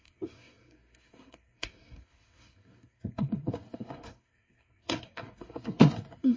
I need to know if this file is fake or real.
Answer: fake